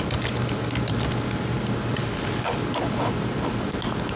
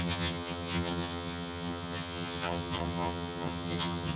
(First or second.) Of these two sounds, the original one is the first